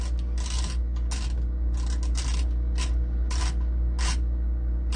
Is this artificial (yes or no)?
no